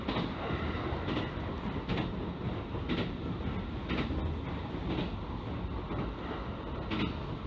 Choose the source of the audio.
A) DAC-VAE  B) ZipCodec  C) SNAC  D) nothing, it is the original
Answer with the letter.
D